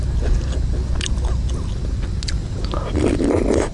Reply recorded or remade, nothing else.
recorded